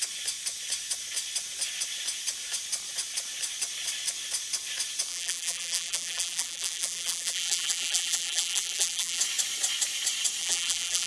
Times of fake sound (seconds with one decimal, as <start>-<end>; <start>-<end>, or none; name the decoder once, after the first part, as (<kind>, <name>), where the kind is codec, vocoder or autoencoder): 5.1-9.2 (vocoder, BigVGAN v2); 10.4-11.1